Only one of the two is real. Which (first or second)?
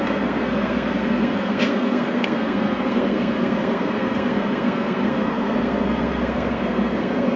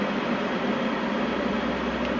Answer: second